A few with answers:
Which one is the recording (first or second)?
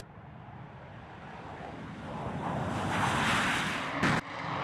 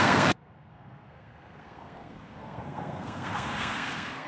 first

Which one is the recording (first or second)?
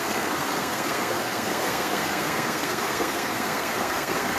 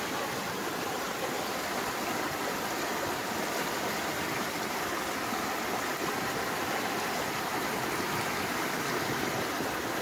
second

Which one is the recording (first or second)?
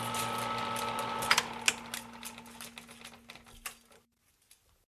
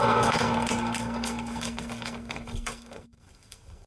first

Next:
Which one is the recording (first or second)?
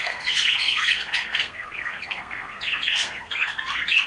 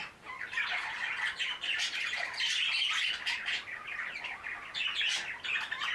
second